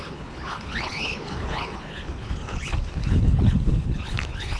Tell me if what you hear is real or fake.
fake